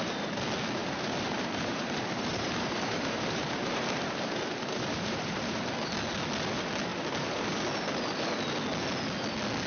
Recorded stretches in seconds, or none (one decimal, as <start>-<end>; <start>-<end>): 0.0-0.8; 5.6-6.9; 7.6-9.7